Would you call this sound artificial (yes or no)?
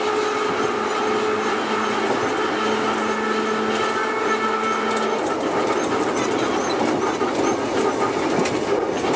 no